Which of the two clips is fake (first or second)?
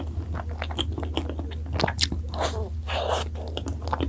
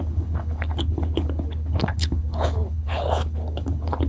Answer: second